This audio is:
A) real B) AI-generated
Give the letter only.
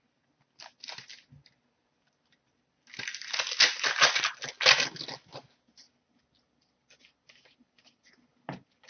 A